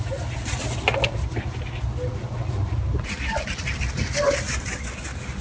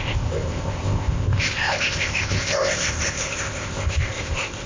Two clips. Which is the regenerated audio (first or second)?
second